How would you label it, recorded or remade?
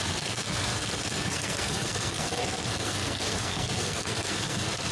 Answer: remade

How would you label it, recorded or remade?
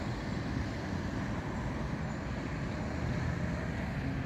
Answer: recorded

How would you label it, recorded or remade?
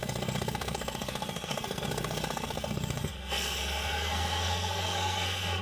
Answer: remade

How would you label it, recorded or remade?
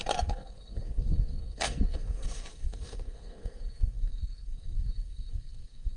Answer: remade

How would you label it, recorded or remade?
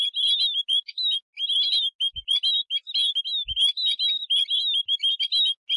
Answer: recorded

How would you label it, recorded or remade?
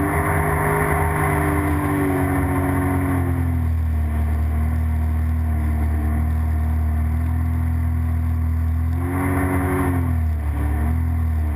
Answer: recorded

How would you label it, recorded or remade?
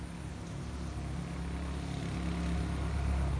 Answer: recorded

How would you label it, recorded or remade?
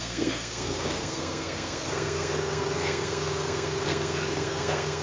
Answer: remade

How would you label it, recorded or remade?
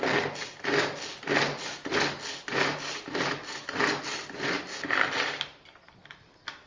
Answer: recorded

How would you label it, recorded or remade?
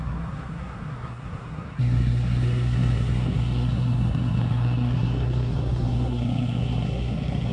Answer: remade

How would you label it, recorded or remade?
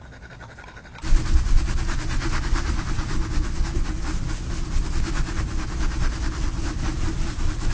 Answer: recorded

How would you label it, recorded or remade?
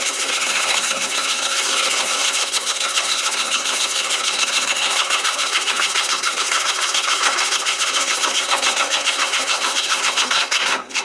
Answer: remade